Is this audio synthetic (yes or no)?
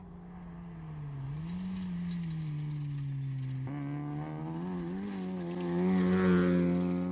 no